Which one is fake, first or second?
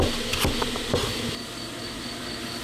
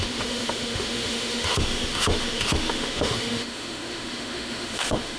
second